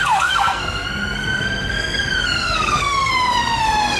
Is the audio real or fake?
fake